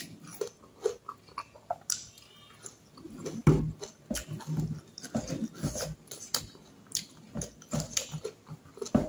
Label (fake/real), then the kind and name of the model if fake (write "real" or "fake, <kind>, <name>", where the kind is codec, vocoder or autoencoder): real